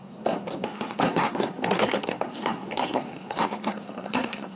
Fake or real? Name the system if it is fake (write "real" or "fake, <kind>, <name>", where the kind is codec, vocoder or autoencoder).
fake, codec, SNAC